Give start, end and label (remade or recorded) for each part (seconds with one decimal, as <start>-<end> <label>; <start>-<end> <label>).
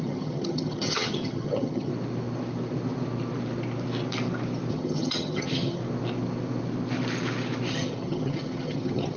0.0-1.9 remade; 1.9-4.7 recorded; 4.7-5.8 remade; 5.8-7.7 recorded; 7.7-9.2 remade